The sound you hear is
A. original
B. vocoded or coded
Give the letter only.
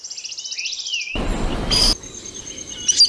A